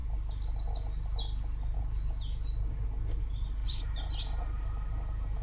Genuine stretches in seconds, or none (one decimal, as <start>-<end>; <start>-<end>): 0.0-3.2